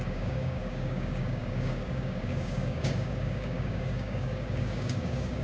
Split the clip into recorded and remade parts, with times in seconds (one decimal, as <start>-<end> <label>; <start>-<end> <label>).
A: 0.0-5.4 remade